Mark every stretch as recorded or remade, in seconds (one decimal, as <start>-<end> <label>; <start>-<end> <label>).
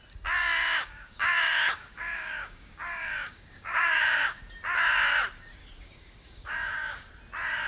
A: 0.0-0.4 recorded; 0.4-4.4 remade; 4.4-5.6 recorded; 5.6-7.1 remade; 7.1-7.7 recorded